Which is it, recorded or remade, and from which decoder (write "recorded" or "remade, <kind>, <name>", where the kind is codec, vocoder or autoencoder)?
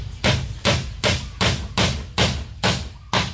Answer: recorded